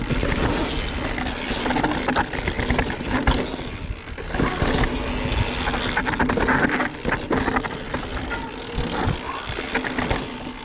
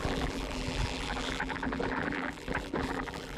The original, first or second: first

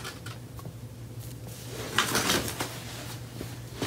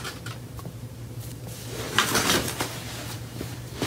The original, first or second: first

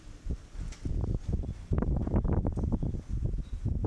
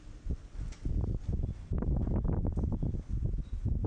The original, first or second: second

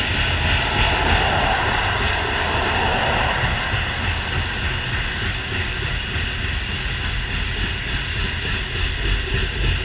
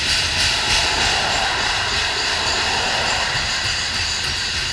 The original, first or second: first